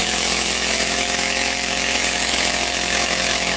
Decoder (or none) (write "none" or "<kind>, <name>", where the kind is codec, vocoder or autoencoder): autoencoder, DAC-VAE